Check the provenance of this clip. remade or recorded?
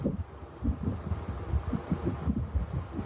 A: recorded